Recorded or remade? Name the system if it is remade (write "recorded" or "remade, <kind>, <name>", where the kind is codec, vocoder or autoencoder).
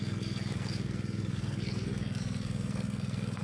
remade, codec, SNAC